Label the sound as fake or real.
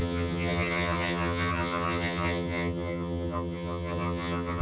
fake